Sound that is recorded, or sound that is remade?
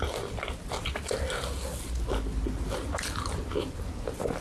recorded